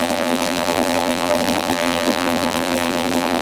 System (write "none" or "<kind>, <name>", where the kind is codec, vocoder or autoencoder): vocoder, BigVGAN v2